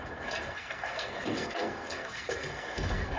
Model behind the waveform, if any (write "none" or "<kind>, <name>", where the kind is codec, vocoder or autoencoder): codec, SNAC